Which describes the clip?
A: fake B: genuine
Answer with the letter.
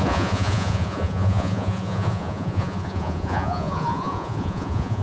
A